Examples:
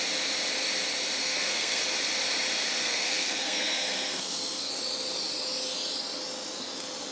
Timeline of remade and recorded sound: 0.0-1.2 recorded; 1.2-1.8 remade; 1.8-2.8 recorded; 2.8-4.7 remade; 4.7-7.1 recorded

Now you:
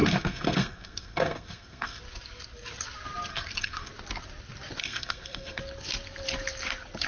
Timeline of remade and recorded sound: 0.0-2.0 remade; 2.0-3.3 recorded; 3.3-3.9 remade; 3.9-4.8 recorded; 4.8-5.6 remade; 5.6-7.1 recorded

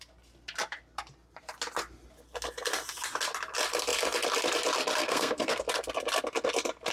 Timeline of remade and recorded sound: 0.0-5.0 recorded; 5.0-5.6 remade; 5.6-6.9 recorded

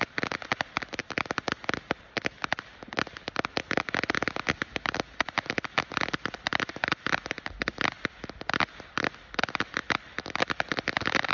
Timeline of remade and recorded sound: 0.0-11.3 recorded

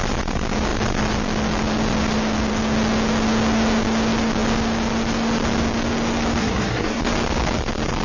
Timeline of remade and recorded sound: 0.0-6.4 recorded; 6.4-7.0 remade; 7.0-8.0 recorded

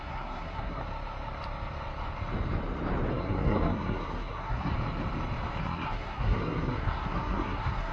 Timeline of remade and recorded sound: 0.0-0.8 remade; 0.8-3.1 recorded; 3.1-4.7 remade; 4.7-5.6 recorded; 5.6-7.9 remade

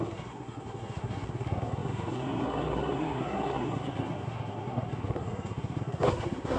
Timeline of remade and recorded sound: 0.0-6.6 remade

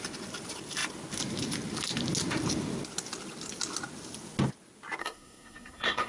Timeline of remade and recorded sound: 0.0-5.0 recorded; 5.0-6.1 remade